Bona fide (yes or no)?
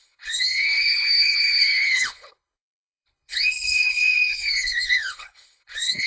no